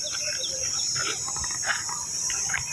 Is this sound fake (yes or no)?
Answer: no